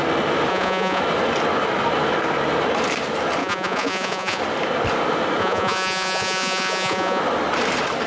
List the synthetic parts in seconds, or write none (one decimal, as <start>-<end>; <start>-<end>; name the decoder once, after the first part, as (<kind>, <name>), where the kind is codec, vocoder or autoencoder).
0.5-1.0 (vocoder, Vocos); 3.4-4.4; 5.4-7.2